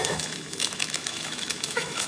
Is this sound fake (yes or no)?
yes